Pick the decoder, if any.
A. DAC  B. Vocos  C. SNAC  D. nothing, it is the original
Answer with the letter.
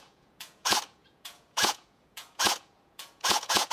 B